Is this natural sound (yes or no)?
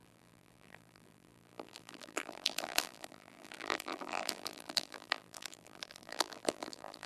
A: no